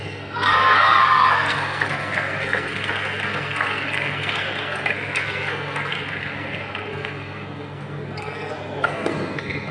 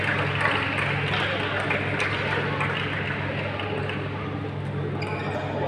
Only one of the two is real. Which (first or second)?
second